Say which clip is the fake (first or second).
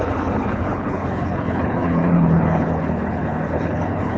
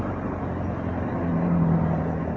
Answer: first